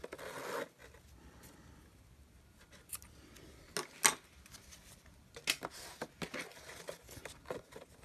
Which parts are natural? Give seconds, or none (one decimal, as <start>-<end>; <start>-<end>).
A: 0.0-8.0